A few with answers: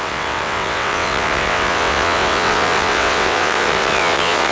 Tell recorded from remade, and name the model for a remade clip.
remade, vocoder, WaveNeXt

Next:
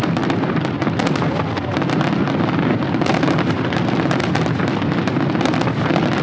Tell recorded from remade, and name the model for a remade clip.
recorded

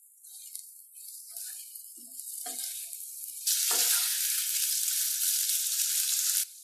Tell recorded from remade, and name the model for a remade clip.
remade, vocoder, BigVGAN v2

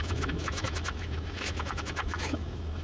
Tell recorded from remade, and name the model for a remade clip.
remade, autoencoder, DAC-VAE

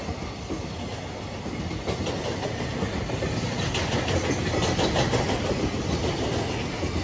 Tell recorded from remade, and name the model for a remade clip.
recorded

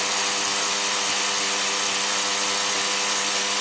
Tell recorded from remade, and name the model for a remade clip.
recorded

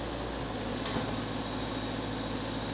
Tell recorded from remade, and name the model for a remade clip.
recorded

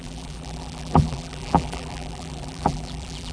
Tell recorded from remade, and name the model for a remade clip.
remade, vocoder, BigVGAN v2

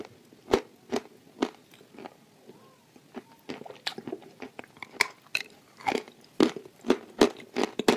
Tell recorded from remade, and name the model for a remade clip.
recorded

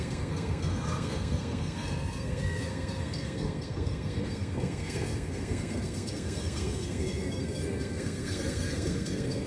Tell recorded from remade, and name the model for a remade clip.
remade, codec, SNAC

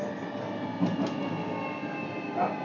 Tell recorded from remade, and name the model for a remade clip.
recorded